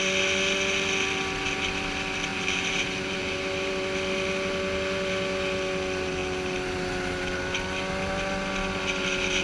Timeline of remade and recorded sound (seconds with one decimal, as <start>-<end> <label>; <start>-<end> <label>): 0.0-2.3 recorded; 2.3-3.7 remade; 3.7-9.4 recorded